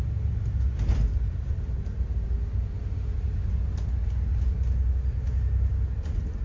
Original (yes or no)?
yes